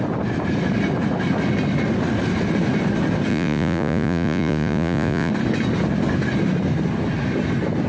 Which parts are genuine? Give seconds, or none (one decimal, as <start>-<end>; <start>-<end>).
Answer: 0.0-3.3; 5.3-7.9